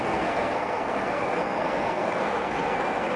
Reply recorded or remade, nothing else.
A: remade